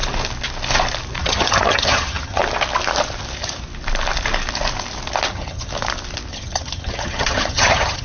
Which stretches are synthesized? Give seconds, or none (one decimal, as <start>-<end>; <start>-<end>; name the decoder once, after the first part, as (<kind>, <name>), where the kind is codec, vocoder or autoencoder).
1.2-2.4 (vocoder, HiFi-GAN); 5.3-5.7; 6.3-8.0